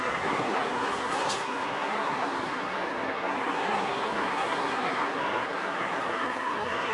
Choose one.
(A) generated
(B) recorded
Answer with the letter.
A